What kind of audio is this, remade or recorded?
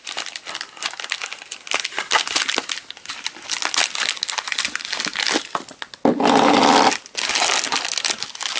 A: recorded